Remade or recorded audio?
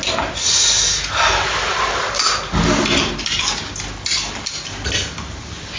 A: recorded